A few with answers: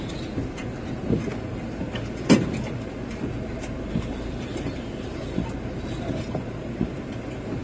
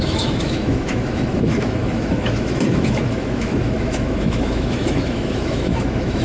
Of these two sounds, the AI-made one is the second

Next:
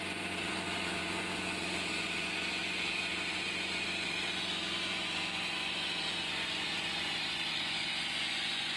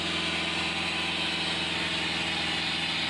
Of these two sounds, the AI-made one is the first